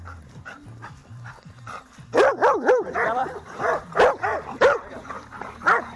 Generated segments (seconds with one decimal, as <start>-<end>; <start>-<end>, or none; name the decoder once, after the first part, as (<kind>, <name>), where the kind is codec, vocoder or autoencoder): 1.0-3.8 (vocoder, BigVGAN v2); 4.3-5.1